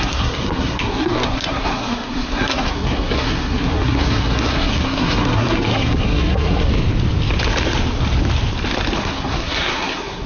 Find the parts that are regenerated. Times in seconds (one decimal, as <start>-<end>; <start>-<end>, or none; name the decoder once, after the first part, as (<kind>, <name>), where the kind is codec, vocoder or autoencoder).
0.0-6.7 (codec, SNAC); 9.0-10.3